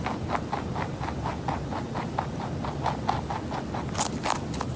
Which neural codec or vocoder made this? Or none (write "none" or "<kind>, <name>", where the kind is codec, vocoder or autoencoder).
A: none